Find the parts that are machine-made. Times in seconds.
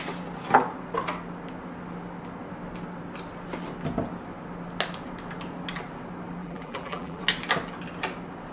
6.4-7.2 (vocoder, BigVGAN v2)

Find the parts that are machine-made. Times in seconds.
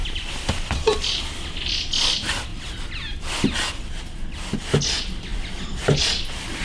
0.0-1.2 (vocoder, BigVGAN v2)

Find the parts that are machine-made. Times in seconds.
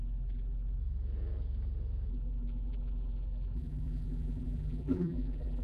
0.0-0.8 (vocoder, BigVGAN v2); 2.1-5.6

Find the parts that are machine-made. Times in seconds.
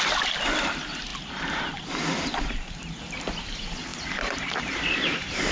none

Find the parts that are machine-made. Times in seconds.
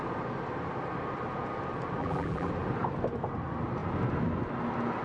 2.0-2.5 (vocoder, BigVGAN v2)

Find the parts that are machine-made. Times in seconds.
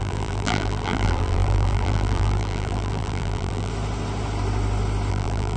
0.0-3.7 (vocoder, BigVGAN v2); 5.1-5.6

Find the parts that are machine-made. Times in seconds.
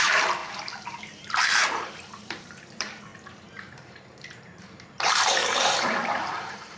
0.0-6.8 (vocoder, BigVGAN v2)